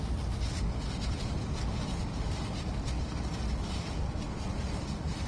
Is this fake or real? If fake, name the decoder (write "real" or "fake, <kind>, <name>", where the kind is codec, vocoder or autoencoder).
real